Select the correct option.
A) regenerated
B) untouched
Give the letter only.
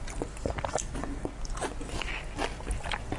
B